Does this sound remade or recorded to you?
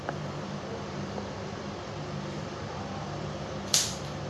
remade